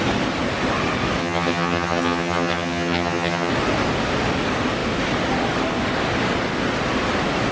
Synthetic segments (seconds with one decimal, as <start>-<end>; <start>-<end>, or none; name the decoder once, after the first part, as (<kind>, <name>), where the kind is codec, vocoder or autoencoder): 1.2-3.5 (vocoder, HiFi-GAN)